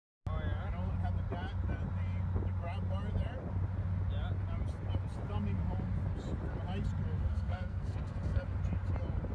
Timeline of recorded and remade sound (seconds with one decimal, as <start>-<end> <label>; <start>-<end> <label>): 0.0-7.2 recorded; 7.2-8.4 remade; 8.4-9.3 recorded